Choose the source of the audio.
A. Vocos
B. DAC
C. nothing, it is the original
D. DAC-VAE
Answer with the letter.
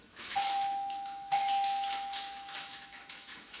D